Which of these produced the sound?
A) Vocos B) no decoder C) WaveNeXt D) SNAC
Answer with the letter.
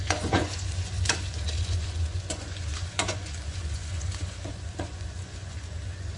A